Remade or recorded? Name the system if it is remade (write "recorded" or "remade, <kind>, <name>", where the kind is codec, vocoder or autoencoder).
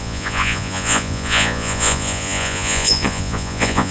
remade, vocoder, Vocos